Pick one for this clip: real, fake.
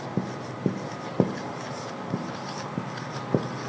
real